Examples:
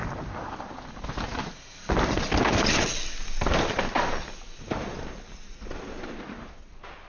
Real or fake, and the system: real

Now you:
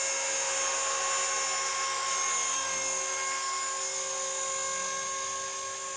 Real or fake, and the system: real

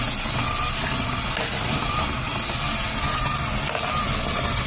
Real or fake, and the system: real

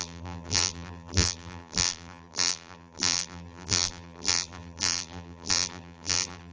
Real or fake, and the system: fake, vocoder, BigVGAN v2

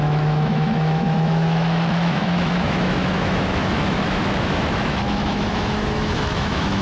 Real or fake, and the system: fake, autoencoder, DAC-VAE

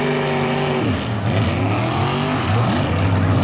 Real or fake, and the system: real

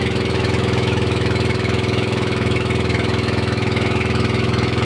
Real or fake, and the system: fake, autoencoder, DAC-VAE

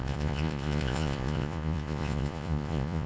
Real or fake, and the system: fake, vocoder, Vocos